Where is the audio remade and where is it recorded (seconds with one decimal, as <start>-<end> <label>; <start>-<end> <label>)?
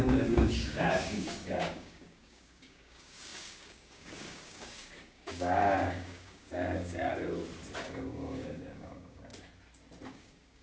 0.0-7.1 remade; 7.1-7.8 recorded; 7.8-9.3 remade; 9.3-10.1 recorded; 10.1-10.6 remade